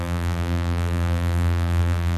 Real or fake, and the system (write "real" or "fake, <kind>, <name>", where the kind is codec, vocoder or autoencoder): fake, vocoder, BigVGAN v2